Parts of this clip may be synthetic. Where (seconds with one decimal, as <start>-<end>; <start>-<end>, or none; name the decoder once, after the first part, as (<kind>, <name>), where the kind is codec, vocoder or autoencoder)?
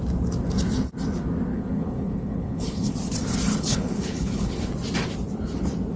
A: 1.5-2.9 (codec, HILCodec); 3.5-4.7